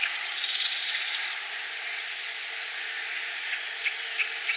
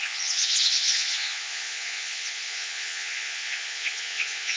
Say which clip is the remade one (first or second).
second